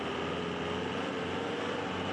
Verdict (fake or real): real